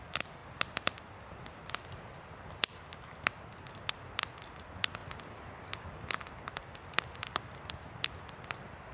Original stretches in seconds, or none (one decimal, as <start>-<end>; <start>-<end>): 0.0-8.9